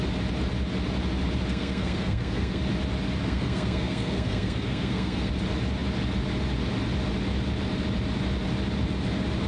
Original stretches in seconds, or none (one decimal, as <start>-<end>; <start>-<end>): 0.0-1.5; 2.6-3.2; 5.3-9.5